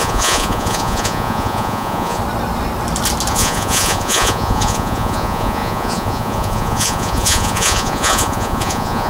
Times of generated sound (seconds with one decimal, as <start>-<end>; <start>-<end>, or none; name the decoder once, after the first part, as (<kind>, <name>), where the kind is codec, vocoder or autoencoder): 0.0-2.2 (vocoder, Vocos); 3.3-9.1